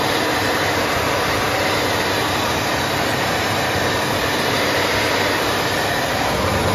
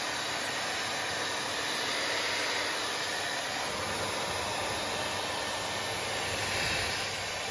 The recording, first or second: second